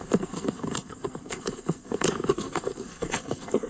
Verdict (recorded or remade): remade